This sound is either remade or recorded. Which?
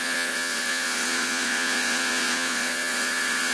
remade